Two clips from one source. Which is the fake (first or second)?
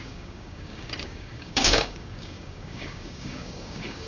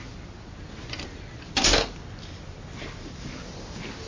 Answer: first